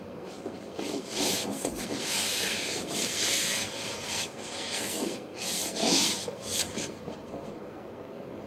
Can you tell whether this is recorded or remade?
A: remade